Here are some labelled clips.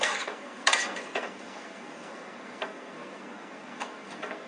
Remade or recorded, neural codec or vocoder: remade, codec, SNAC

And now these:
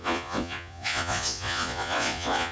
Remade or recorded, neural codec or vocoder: remade, vocoder, Vocos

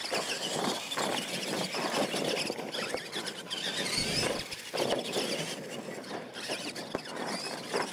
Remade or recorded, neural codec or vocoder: recorded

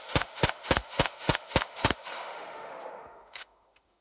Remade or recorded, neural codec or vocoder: remade, autoencoder, DAC-VAE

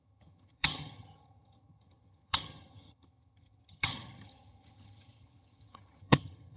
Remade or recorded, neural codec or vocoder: remade, vocoder, HiFi-GAN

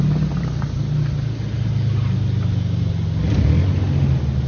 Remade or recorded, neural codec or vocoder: recorded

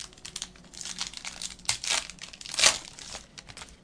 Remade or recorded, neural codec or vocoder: recorded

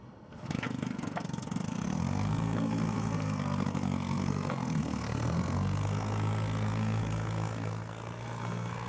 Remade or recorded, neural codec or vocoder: remade, codec, SNAC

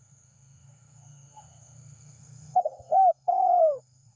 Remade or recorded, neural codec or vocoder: remade, codec, SNAC